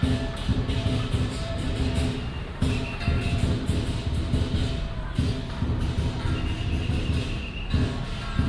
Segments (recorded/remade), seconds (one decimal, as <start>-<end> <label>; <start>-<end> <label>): 0.0-0.5 recorded; 0.5-1.8 remade; 1.8-8.5 recorded